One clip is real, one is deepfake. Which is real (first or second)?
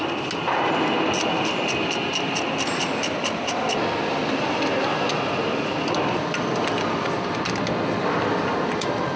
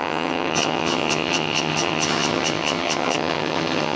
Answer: first